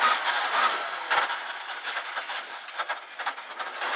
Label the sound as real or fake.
real